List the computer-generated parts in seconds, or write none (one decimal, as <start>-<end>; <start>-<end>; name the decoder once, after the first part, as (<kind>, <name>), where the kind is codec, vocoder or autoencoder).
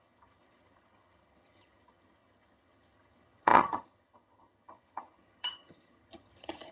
0.0-6.7 (vocoder, HiFi-GAN)